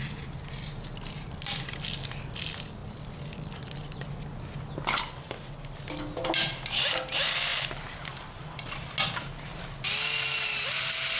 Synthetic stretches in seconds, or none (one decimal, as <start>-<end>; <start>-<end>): none